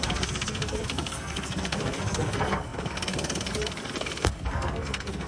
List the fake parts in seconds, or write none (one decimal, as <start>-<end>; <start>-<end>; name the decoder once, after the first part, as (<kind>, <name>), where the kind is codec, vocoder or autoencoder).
0.0-5.3 (codec, SNAC)